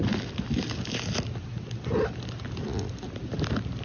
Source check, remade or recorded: recorded